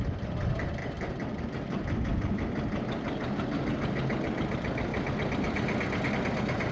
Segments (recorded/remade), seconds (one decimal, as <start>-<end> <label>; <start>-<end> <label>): 0.0-6.7 recorded